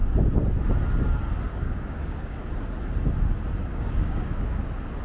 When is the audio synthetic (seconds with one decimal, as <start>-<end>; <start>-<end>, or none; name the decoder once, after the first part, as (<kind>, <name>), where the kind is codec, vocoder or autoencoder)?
1.5-2.4 (codec, DAC); 3.7-4.6